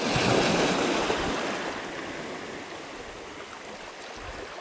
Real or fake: real